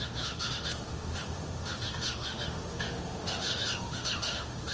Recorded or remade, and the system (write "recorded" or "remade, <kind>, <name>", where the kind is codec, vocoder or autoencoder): remade, autoencoder, DAC-VAE